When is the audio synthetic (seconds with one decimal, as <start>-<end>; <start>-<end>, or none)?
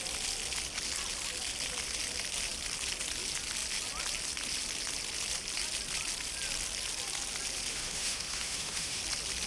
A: 7.7-9.0